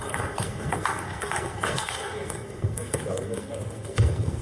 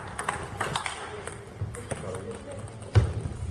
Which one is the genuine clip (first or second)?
second